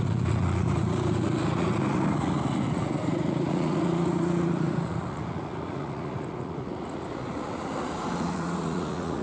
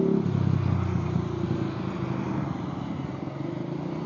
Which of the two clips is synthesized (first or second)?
first